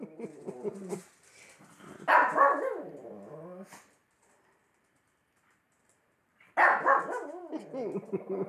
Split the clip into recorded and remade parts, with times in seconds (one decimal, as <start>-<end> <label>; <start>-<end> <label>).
0.0-4.0 recorded; 4.0-7.4 remade; 7.4-8.5 recorded